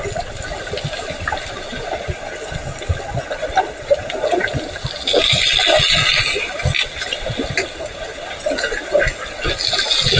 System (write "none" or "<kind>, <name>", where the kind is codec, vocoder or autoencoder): none